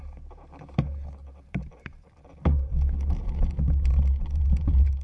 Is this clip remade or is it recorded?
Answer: remade